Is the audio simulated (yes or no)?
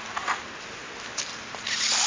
yes